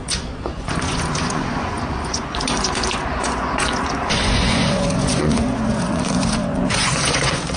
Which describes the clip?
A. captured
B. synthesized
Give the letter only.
B